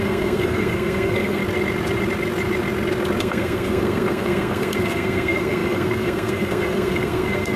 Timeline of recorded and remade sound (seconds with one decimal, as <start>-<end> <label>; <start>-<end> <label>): 0.0-1.4 remade; 1.4-3.2 recorded; 3.2-7.6 remade